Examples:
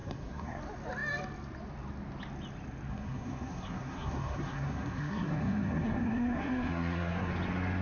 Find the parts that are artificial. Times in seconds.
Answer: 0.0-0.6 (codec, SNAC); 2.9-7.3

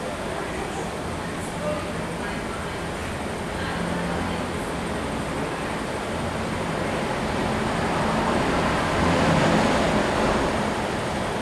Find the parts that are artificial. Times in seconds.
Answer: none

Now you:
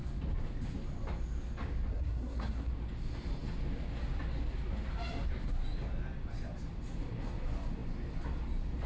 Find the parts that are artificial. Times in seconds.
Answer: 1.9-2.7 (codec, SNAC)

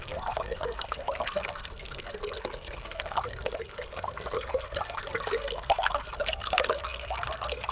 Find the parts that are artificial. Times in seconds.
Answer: 0.0-7.7 (codec, SNAC)

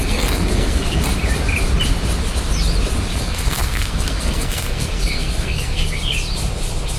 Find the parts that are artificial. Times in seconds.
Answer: 0.0-1.0 (codec, SNAC); 3.1-6.0

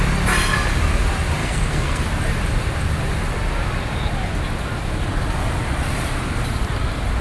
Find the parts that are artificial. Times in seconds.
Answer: 1.4-2.0 (codec, SNAC)

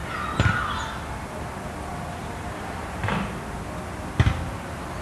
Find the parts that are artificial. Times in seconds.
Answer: none

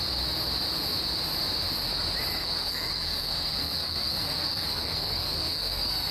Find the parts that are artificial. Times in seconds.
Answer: 2.3-6.1 (codec, SNAC)